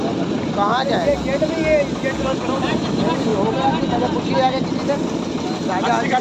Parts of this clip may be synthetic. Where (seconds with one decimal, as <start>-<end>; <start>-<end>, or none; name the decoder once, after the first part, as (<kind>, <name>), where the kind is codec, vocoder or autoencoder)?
none